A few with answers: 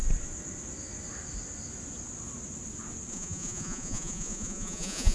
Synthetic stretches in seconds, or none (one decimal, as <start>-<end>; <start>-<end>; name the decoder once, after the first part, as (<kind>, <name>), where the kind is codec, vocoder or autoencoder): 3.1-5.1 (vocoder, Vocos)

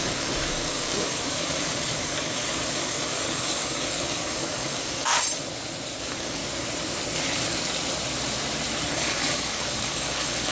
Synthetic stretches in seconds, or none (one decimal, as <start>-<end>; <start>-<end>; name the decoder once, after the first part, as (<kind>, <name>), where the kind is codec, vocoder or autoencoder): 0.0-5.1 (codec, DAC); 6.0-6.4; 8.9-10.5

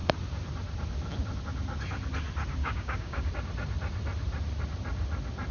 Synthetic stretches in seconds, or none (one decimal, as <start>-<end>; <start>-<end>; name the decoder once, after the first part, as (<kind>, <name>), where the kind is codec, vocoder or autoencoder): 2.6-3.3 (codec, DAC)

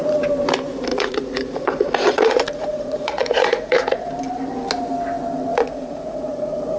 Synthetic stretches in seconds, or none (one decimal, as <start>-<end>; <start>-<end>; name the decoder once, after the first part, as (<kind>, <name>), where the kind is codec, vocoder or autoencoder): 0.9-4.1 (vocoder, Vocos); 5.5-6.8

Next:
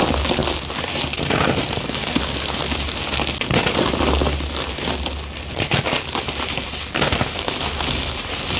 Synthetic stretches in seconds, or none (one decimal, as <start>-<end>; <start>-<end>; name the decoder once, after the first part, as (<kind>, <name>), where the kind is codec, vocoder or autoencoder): none

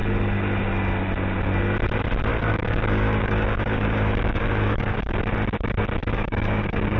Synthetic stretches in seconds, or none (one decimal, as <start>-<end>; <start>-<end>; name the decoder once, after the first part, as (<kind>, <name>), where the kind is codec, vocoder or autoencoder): 2.3-5.3 (codec, DAC); 6.0-7.0

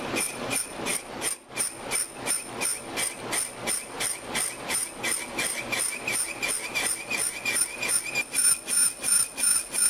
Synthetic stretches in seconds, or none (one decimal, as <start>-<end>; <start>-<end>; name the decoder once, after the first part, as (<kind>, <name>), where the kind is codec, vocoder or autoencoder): none